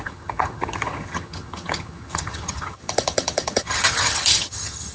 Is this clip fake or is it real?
fake